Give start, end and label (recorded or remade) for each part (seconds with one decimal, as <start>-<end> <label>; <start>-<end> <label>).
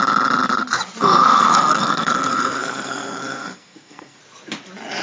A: 0.0-1.2 recorded; 1.2-4.2 remade; 4.2-5.0 recorded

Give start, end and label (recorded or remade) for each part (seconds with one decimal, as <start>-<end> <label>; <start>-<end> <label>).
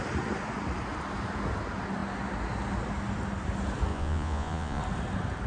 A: 0.0-3.9 recorded; 3.9-4.8 remade; 4.8-5.5 recorded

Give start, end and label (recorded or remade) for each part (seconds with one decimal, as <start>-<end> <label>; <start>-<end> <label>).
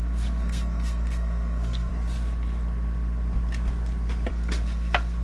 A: 0.0-1.9 remade; 1.9-4.3 recorded; 4.3-5.2 remade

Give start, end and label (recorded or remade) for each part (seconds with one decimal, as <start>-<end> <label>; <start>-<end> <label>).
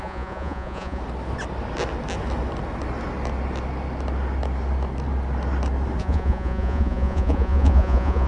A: 0.0-1.0 remade; 1.0-6.0 recorded; 6.0-8.3 remade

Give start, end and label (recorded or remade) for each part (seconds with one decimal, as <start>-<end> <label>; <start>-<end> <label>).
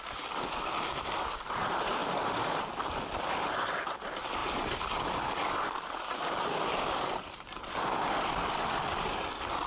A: 0.0-9.7 recorded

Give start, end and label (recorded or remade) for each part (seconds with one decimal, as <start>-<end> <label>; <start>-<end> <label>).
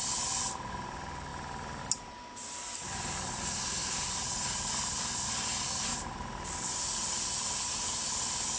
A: 0.0-1.3 recorded; 1.3-1.8 remade; 1.8-5.9 recorded; 5.9-8.6 remade